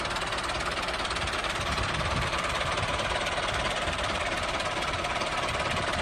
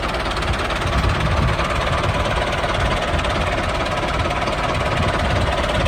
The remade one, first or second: first